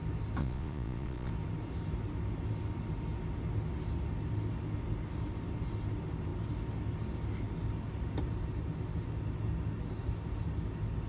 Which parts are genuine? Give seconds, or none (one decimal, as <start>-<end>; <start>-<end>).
0.0-0.4; 1.3-11.1